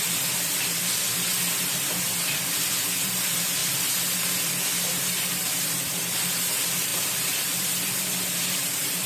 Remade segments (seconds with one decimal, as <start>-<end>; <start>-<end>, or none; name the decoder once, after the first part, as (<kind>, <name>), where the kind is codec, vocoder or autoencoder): 0.0-3.6 (vocoder, BigVGAN v2); 5.4-9.1